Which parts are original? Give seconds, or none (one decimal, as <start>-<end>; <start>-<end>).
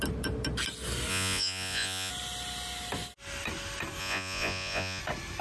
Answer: 0.0-1.1; 2.1-4.0; 5.0-5.4